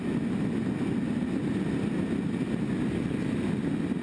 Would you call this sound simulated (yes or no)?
no